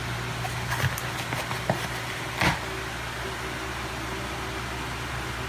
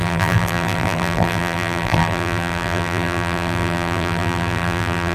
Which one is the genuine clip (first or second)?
first